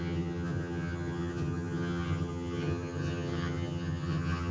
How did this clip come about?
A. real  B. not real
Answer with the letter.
B